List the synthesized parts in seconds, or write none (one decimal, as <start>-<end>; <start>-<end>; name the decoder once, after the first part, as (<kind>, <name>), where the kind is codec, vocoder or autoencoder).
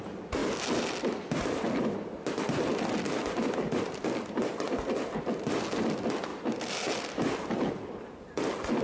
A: none